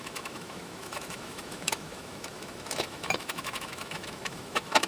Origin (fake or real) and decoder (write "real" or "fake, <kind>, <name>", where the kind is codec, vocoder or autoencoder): fake, autoencoder, DAC-VAE